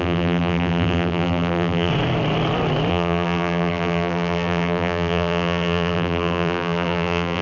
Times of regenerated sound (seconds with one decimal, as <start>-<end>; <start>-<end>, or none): 0.0-1.9; 2.9-7.4